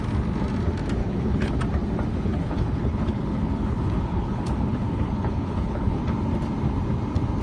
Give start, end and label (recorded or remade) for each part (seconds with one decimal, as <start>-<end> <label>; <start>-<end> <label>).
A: 0.0-1.0 recorded; 1.0-1.6 remade; 1.6-2.1 recorded; 2.1-6.0 remade; 6.0-7.4 recorded